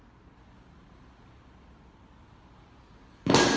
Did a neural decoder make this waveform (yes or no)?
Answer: no